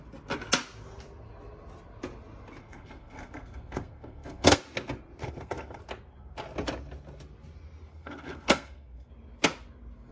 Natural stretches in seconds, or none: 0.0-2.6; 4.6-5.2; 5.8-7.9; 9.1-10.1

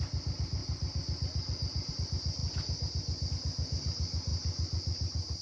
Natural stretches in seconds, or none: 0.0-5.4